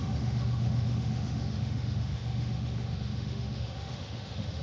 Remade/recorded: remade